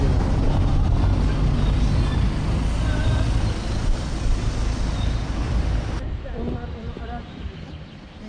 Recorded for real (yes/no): yes